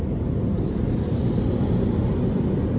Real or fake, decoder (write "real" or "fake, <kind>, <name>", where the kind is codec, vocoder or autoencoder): real